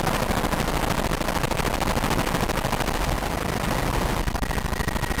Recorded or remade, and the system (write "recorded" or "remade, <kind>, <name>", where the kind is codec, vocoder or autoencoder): recorded